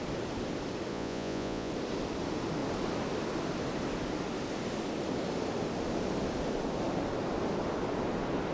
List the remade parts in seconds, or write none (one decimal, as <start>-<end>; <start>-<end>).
0.9-1.7